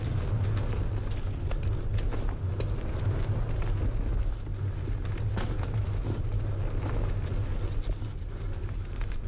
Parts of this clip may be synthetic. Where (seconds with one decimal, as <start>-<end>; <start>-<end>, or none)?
none